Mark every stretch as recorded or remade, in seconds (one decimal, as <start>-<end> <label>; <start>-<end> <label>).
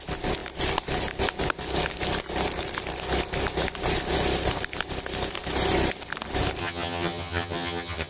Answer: 0.0-6.6 recorded; 6.6-8.1 remade